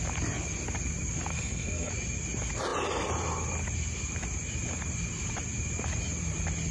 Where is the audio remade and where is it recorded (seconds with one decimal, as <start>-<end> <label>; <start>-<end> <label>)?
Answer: 0.0-1.3 recorded; 1.3-1.9 remade; 1.9-6.7 recorded